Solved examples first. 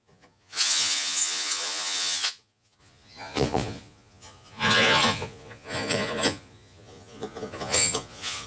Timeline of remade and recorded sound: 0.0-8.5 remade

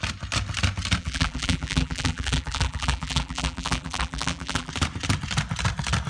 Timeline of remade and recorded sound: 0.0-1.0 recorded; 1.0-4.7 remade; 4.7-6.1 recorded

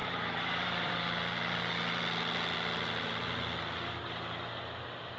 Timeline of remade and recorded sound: 0.0-0.9 remade; 0.9-5.2 recorded